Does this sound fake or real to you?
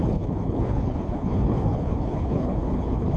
fake